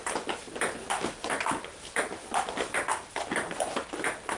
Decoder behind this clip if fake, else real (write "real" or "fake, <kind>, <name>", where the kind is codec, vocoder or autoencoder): real